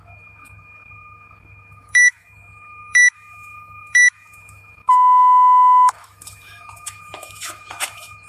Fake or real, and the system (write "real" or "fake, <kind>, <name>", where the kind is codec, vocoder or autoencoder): fake, autoencoder, DAC-VAE